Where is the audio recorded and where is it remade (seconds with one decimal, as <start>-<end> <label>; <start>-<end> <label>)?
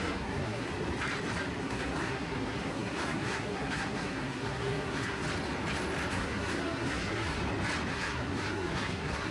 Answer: 0.0-0.7 remade; 0.7-1.6 recorded; 1.6-5.2 remade; 5.2-6.1 recorded; 6.1-7.4 remade; 7.4-7.9 recorded; 7.9-9.3 remade